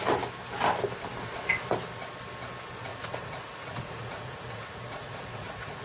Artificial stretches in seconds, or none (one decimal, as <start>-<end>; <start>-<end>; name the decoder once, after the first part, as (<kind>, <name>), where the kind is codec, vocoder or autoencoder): 2.9-5.8 (vocoder, Vocos)